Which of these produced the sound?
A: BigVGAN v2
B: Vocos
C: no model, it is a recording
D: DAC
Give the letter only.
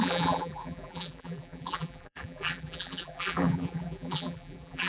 A